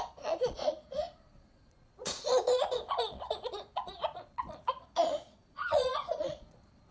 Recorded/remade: remade